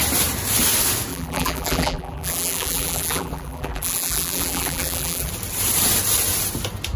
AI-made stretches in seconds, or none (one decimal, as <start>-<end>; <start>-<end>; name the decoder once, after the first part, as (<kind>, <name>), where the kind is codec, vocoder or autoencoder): 1.1-5.3 (vocoder, BigVGAN v2)